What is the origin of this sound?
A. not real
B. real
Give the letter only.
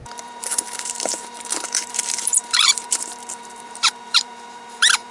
A